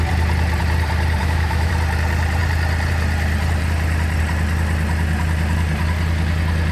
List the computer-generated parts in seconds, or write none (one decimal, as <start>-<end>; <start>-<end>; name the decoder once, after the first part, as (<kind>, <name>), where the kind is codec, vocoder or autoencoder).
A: 1.2-1.7 (autoencoder, DAC-VAE)